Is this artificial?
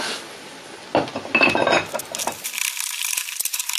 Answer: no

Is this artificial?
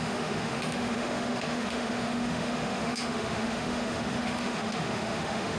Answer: yes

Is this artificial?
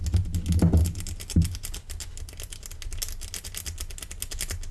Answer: no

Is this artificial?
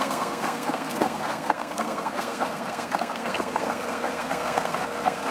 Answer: yes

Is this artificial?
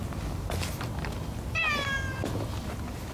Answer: no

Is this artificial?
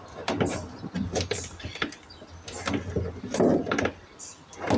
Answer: no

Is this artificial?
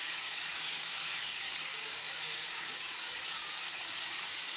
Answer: yes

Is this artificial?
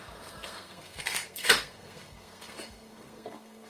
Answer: yes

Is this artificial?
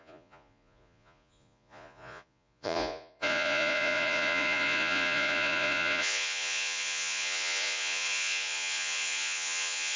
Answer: yes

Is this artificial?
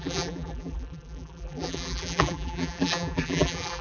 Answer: yes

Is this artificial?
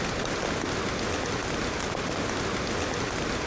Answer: no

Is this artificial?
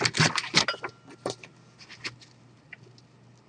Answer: no